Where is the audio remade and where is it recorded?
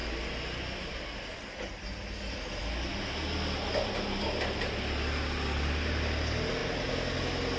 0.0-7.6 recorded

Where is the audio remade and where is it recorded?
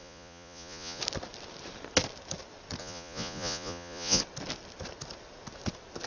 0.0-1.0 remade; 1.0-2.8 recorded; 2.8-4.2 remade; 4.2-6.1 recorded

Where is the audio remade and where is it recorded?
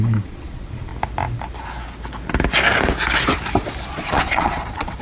0.0-0.9 remade; 0.9-3.9 recorded; 3.9-5.0 remade